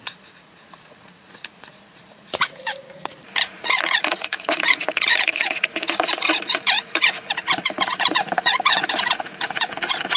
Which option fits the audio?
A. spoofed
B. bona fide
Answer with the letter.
A